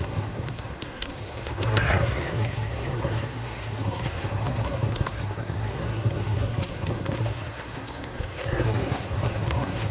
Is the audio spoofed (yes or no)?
yes